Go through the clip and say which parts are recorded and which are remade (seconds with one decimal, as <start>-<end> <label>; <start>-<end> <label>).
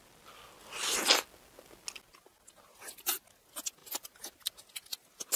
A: 0.0-0.6 recorded; 0.6-1.1 remade; 1.1-3.8 recorded; 3.8-4.5 remade; 4.5-5.4 recorded